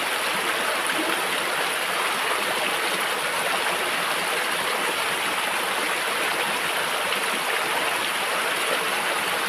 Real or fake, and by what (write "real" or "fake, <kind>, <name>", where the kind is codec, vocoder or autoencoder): real